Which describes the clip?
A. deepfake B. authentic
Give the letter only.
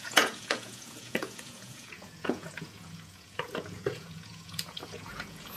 A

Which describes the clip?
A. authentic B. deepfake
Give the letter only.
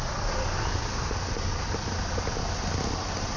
A